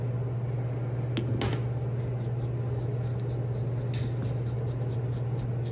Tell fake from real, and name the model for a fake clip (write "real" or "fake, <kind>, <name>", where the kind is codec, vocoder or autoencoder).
real